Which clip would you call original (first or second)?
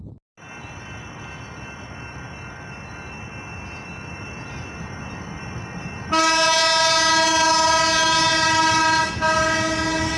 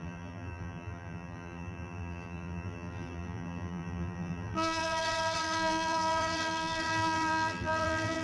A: first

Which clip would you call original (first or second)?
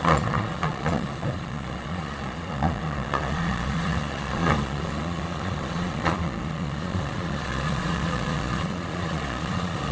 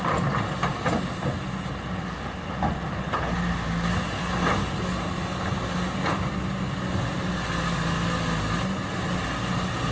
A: second